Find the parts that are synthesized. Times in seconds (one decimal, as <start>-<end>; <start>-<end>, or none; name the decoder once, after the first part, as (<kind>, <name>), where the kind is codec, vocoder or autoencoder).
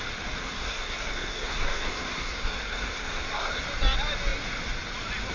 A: 0.4-3.6 (codec, SNAC)